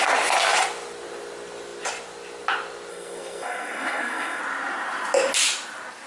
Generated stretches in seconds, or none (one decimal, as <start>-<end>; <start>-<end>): 2.9-4.4